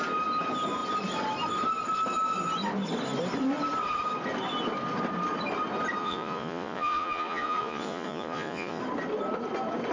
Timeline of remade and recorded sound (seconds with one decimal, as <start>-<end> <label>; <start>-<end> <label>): 0.0-6.0 recorded; 6.0-8.8 remade; 8.8-9.9 recorded

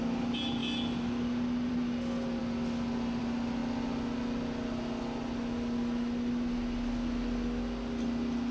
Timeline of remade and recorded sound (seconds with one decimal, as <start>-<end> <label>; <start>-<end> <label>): 0.0-8.5 recorded

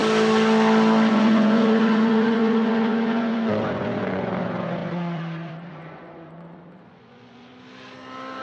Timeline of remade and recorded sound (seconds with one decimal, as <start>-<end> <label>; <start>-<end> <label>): 0.0-1.1 recorded; 1.1-7.5 remade; 7.5-8.4 recorded

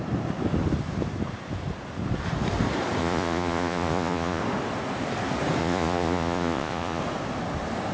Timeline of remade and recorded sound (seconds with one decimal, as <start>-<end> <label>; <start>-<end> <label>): 0.0-3.0 recorded; 3.0-4.4 remade; 4.4-5.6 recorded; 5.6-7.0 remade; 7.0-7.9 recorded

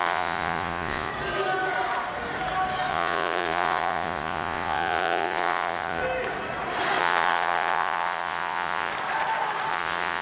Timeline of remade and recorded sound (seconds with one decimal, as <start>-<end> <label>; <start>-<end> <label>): 0.0-1.1 remade; 1.1-2.9 recorded; 2.9-6.0 remade; 6.0-7.0 recorded; 7.0-8.9 remade; 8.9-9.7 recorded; 9.7-10.2 remade

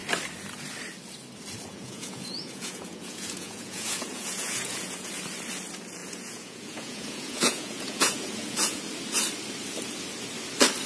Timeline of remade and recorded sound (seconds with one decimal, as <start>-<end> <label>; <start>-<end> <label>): 0.0-1.7 recorded; 1.7-5.1 remade; 5.1-6.0 recorded; 6.0-8.8 remade; 8.8-10.9 recorded